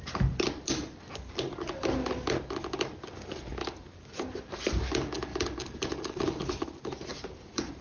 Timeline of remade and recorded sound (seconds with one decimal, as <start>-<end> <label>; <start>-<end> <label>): 0.0-5.3 recorded; 5.3-6.2 remade; 6.2-7.1 recorded; 7.1-7.8 remade